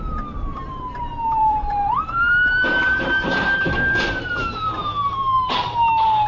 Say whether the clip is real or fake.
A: fake